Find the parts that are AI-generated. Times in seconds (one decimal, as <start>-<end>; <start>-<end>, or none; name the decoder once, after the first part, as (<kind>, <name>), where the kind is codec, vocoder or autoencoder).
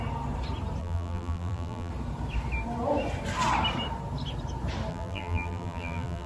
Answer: 0.8-1.9 (vocoder, BigVGAN v2); 4.9-6.3